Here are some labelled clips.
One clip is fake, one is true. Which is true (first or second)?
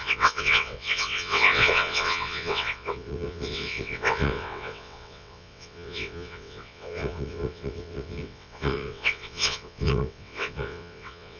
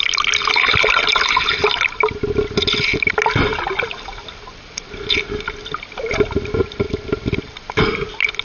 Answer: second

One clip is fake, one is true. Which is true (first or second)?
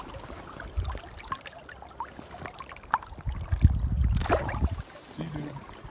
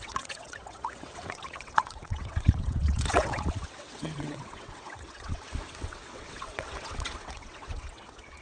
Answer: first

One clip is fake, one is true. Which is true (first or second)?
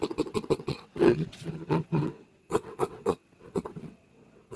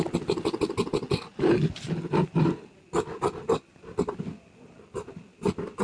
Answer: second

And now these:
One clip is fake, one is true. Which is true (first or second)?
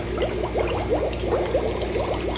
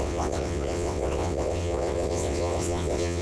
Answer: first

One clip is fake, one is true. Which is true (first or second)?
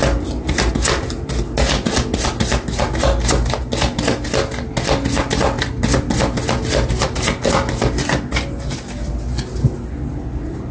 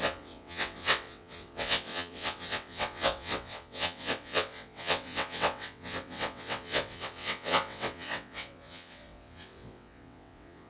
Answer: first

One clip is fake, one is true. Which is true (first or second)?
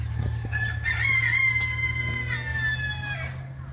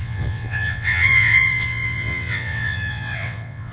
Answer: first